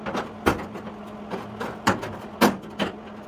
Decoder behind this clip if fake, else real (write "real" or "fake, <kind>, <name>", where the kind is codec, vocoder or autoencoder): real